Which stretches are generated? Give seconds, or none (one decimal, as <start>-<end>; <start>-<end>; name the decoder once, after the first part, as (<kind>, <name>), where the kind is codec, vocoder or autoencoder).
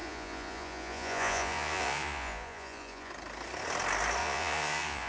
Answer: 0.0-3.1 (vocoder, Vocos); 4.2-5.1